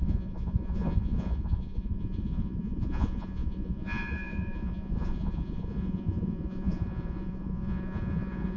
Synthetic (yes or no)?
yes